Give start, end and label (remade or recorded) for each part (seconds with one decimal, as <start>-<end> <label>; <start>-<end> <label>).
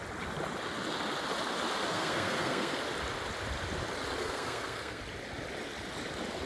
0.0-1.9 recorded; 1.9-2.8 remade; 2.8-4.2 recorded; 4.2-5.0 remade; 5.0-6.5 recorded